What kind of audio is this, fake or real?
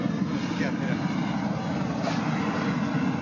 real